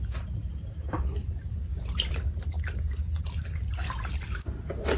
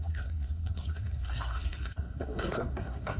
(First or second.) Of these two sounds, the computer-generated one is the second